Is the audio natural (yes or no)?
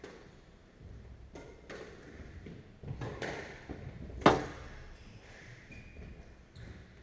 yes